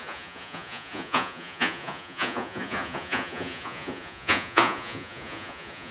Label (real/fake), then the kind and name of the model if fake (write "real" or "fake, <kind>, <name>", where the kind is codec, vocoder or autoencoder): fake, vocoder, Vocos